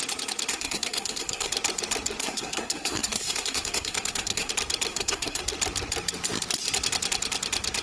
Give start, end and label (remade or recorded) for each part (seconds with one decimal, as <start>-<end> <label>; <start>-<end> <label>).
0.0-0.5 recorded; 0.5-1.5 remade; 1.5-2.2 recorded; 2.2-4.5 remade; 4.5-4.9 recorded; 4.9-5.4 remade; 5.4-7.8 recorded